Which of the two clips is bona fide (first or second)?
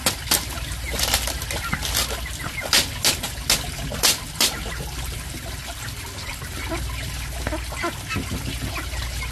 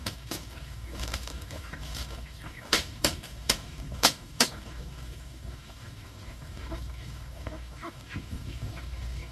first